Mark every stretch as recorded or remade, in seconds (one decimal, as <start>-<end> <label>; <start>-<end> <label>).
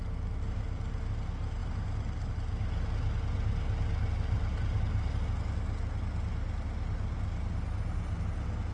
0.0-8.7 recorded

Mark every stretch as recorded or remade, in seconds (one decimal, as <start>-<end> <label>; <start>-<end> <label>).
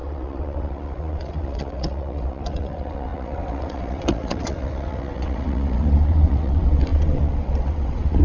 0.0-8.2 remade